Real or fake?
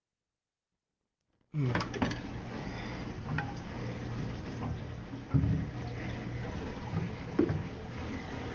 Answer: real